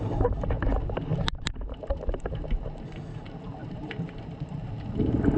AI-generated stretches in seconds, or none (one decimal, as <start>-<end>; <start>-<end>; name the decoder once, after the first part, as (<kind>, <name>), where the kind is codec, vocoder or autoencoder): 1.1-2.0 (vocoder, BigVGAN v2); 3.6-4.6